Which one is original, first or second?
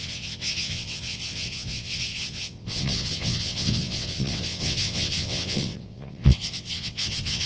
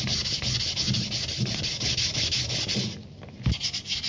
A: second